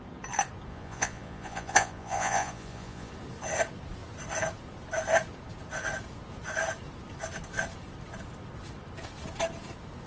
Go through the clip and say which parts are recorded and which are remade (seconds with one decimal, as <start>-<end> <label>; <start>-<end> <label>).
0.0-0.7 recorded; 0.7-3.1 remade; 3.1-10.1 recorded

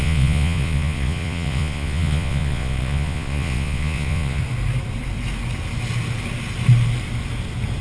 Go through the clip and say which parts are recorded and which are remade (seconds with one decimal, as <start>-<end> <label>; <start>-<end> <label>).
0.0-4.4 remade; 4.4-7.8 recorded

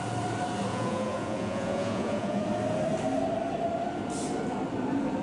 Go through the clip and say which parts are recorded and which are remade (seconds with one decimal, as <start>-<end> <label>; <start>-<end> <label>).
0.0-0.7 recorded; 0.7-2.4 remade; 2.4-5.2 recorded

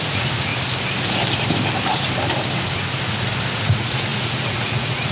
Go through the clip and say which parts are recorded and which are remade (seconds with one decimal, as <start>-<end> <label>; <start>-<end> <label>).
0.0-0.5 remade; 0.5-3.6 recorded; 3.6-5.1 remade